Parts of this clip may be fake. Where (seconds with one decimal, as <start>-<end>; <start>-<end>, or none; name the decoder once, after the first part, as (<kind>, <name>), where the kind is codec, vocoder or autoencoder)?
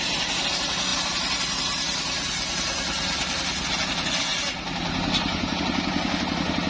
0.9-1.6 (vocoder, BigVGAN v2)